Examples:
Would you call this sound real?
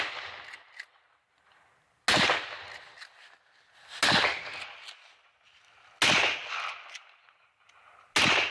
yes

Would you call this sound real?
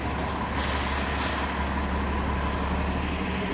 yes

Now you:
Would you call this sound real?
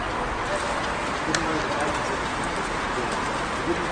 yes